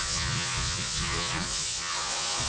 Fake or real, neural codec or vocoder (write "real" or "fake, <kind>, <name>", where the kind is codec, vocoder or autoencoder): fake, vocoder, Vocos